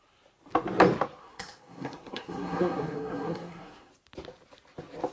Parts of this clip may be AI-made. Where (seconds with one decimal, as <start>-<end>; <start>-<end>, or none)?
1.2-3.9